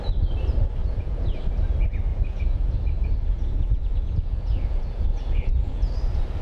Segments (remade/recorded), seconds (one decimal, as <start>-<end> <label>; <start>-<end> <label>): 0.0-0.8 recorded; 0.8-1.4 remade; 1.4-2.1 recorded; 2.1-5.9 remade; 5.9-6.4 recorded